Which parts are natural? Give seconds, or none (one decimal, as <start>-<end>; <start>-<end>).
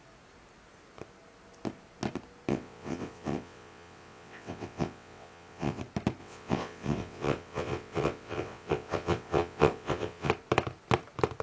0.0-2.5; 5.8-6.2; 10.3-11.4